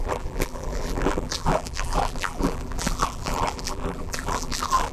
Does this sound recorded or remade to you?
remade